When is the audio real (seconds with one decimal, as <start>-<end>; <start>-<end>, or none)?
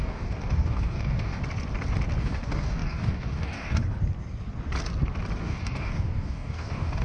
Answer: 1.4-2.2; 3.8-5.4